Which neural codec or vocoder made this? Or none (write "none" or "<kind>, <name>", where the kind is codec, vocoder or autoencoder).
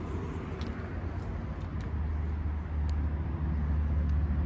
none